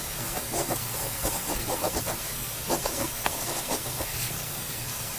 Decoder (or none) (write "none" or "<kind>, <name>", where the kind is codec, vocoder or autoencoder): codec, SNAC